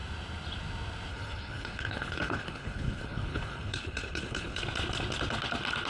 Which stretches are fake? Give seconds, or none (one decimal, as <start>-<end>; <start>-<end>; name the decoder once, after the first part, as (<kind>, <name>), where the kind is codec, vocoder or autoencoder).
1.1-4.6 (codec, HILCodec)